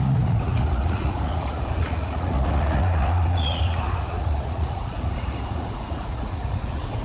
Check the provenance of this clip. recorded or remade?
remade